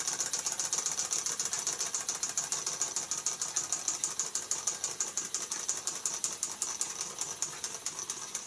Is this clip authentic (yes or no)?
yes